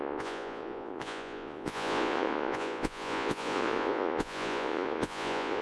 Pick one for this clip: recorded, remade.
remade